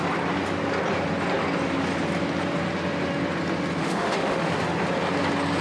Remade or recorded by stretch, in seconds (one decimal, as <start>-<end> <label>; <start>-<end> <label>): 0.0-3.8 recorded; 3.8-4.5 remade; 4.5-5.6 recorded